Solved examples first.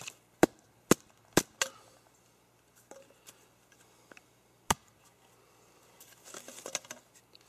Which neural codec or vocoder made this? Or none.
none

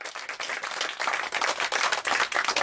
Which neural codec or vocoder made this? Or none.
none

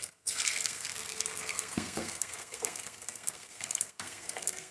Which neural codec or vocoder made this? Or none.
codec, SNAC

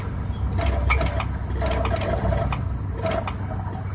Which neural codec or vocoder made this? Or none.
none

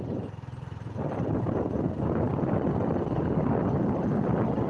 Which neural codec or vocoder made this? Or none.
none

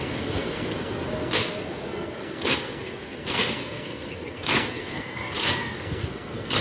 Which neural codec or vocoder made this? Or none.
codec, SNAC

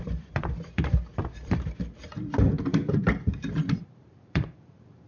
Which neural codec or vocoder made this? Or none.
vocoder, BigVGAN v2